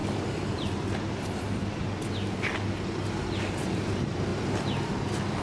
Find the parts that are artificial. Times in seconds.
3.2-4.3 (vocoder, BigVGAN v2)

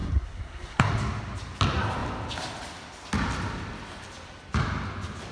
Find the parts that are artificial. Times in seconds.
0.0-0.9 (codec, SNAC)